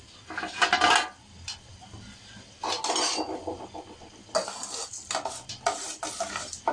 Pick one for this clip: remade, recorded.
recorded